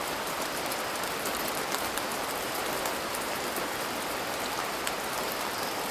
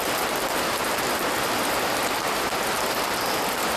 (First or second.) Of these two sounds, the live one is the second